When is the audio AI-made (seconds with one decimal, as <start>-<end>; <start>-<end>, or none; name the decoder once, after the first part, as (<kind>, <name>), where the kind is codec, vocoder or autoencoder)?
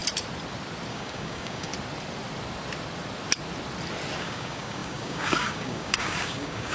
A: 0.9-1.7 (codec, DAC); 4.2-6.7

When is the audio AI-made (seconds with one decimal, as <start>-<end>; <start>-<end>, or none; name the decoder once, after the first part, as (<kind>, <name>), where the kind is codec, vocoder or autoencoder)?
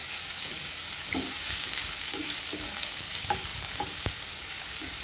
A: 0.0-5.0 (codec, DAC)